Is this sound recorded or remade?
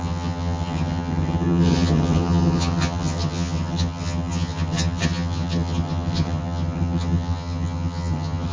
remade